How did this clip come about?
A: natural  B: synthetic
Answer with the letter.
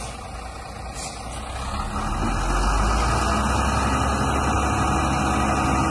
A